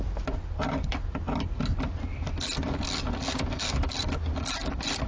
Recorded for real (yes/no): yes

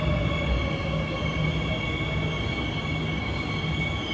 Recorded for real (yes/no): yes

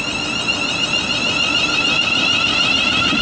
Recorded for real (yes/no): yes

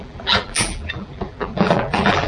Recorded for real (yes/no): no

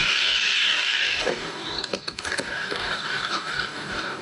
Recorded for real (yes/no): no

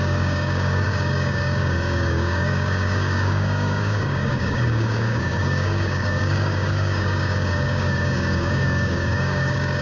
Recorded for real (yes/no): no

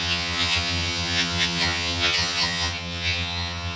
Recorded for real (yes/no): no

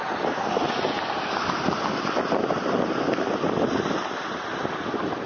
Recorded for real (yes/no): yes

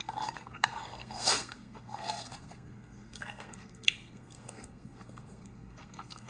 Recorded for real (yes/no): no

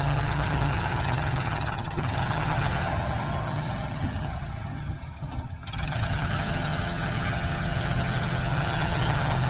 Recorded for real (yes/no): no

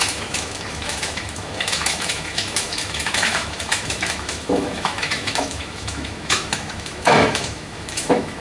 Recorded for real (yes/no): no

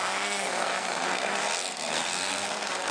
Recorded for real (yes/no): no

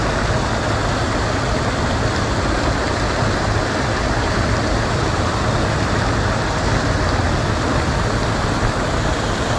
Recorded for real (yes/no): yes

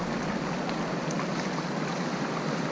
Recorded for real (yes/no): yes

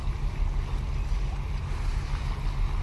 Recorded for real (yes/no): yes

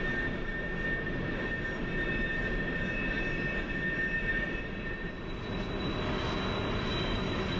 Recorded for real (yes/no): yes